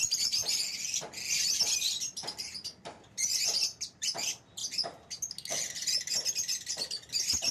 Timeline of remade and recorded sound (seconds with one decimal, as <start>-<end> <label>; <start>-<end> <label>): 0.0-0.4 remade; 0.4-1.6 recorded; 1.6-4.6 remade; 4.6-6.3 recorded; 6.3-7.5 remade